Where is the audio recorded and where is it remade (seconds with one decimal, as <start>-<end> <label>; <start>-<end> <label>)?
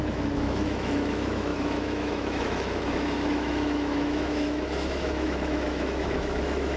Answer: 0.0-6.8 remade